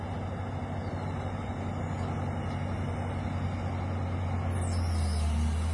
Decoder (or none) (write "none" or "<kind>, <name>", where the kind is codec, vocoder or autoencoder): none